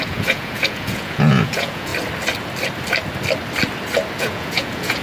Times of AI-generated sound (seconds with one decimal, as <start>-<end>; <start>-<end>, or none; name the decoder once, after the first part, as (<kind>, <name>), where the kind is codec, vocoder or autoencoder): 0.0-1.9 (vocoder, Vocos); 4.2-5.0